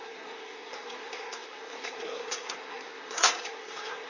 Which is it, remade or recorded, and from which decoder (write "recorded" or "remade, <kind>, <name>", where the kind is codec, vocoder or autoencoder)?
remade, codec, SNAC